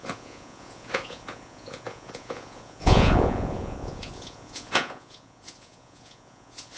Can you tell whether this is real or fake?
fake